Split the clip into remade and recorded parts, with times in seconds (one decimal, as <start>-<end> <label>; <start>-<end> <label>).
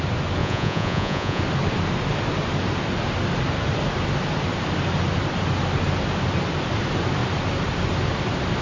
0.0-0.4 recorded; 0.4-1.4 remade; 1.4-8.6 recorded